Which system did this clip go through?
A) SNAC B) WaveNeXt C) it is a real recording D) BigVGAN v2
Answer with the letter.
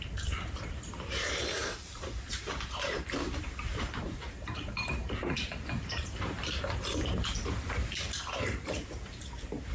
D